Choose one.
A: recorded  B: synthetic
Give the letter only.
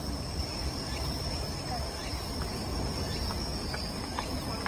A